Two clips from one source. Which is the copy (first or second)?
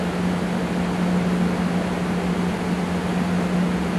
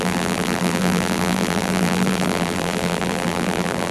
second